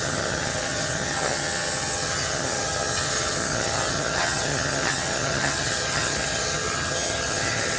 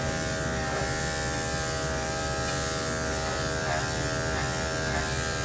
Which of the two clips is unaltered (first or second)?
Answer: second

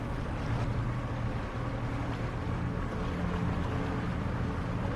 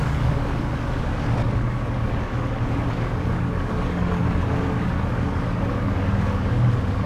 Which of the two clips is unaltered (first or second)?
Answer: first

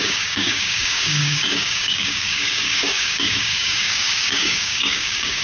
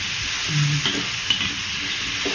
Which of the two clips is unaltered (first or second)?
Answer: second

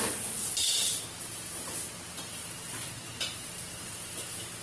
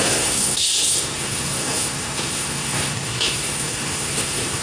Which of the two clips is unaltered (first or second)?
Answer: first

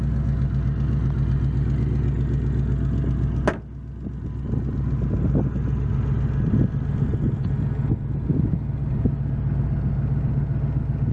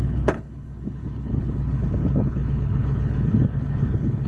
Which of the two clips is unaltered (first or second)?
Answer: first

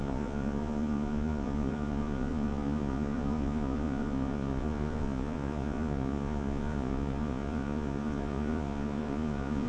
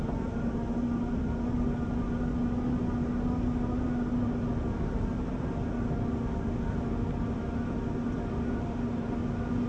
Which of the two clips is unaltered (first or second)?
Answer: second